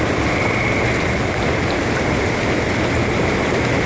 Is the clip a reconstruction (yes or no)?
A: no